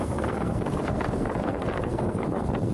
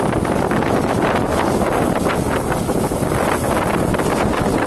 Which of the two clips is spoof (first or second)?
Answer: first